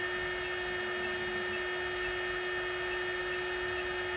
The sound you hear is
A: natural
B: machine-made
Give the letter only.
A